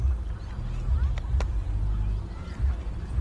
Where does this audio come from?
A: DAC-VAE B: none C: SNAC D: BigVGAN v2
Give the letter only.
B